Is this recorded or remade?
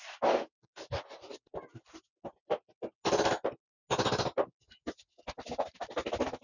recorded